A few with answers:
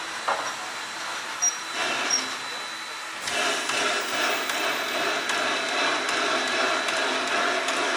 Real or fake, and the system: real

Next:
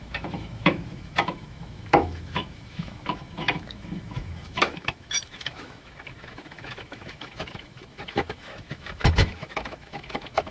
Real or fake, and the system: fake, autoencoder, DAC-VAE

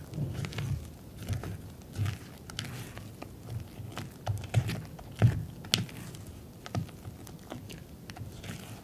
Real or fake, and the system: real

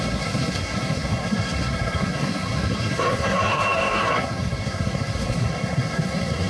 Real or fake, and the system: fake, codec, SNAC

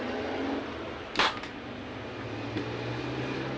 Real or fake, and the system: real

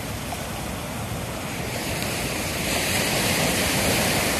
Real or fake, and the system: real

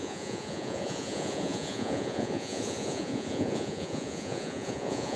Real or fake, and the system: fake, vocoder, Vocos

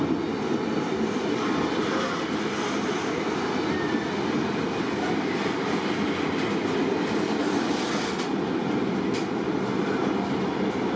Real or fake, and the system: real